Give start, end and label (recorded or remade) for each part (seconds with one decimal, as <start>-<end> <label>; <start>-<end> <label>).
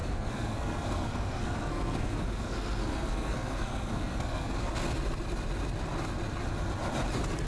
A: 0.0-4.5 remade; 4.5-7.5 recorded